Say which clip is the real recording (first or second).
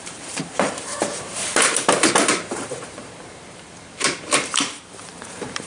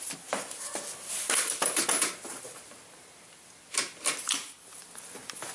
second